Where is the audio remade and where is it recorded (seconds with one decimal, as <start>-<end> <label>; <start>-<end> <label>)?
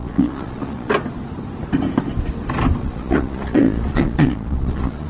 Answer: 0.0-0.9 remade; 0.9-2.8 recorded; 2.8-5.1 remade